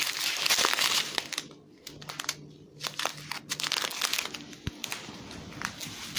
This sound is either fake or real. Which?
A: real